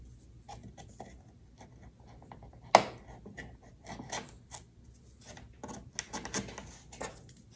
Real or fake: real